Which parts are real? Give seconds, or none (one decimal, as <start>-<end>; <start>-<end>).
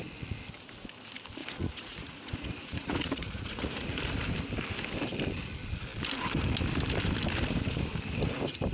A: 0.0-1.4; 4.0-8.7